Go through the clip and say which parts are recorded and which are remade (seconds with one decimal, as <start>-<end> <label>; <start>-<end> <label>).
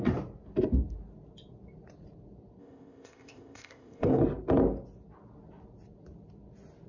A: 0.0-2.6 recorded; 2.6-4.2 remade; 4.2-6.9 recorded